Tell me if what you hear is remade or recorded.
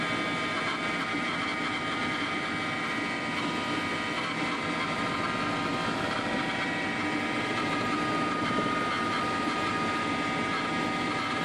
recorded